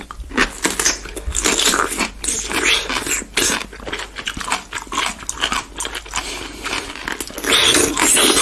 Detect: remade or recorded recorded